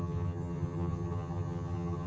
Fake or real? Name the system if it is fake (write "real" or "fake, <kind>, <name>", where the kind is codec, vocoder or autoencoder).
fake, vocoder, HiFi-GAN